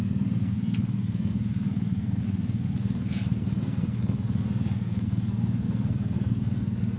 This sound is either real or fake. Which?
fake